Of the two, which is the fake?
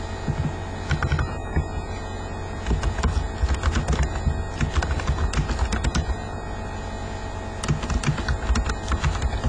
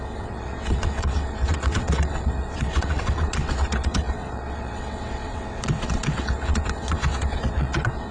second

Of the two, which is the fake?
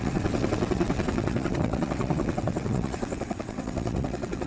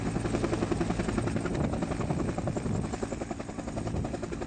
first